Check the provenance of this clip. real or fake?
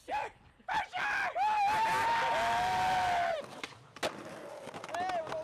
real